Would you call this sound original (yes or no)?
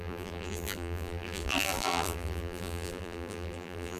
no